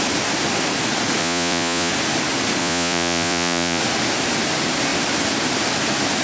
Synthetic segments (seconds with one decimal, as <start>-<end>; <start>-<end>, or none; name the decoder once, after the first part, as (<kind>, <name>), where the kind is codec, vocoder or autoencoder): 1.2-1.9 (vocoder, Vocos); 2.6-3.8

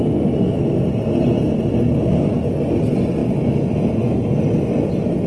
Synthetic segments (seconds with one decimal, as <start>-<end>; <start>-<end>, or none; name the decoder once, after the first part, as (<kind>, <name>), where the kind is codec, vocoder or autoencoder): none

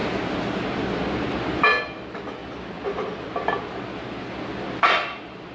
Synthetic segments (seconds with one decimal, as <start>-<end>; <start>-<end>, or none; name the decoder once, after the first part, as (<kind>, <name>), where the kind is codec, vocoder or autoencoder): none